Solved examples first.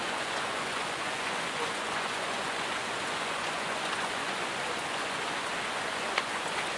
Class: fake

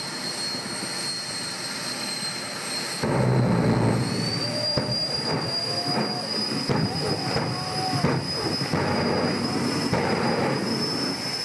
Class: real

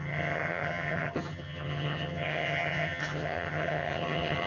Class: fake